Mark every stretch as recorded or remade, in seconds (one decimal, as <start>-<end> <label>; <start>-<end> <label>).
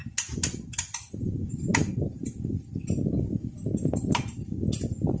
0.0-5.2 recorded